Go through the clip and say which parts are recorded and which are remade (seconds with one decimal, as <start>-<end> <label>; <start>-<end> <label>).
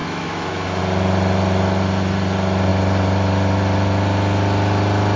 0.0-0.8 remade; 0.8-5.2 recorded